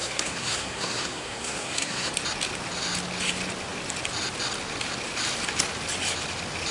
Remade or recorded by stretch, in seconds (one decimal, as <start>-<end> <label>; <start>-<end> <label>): 0.0-2.1 remade; 2.1-6.7 recorded